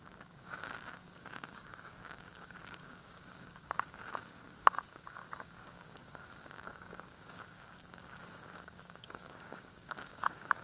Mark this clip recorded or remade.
remade